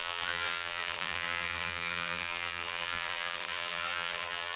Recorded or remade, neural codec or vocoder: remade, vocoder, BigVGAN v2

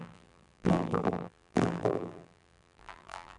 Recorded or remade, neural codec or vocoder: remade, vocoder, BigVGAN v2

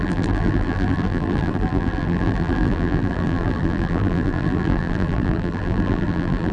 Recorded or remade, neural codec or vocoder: remade, vocoder, BigVGAN v2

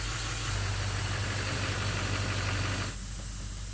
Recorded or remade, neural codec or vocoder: recorded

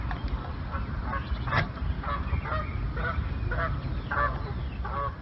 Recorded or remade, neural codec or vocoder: recorded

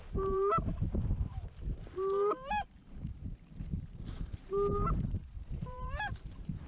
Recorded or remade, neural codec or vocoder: remade, vocoder, BigVGAN v2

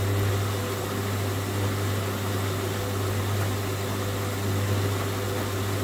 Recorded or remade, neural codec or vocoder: recorded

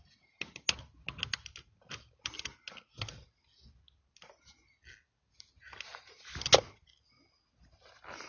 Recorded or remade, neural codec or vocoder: recorded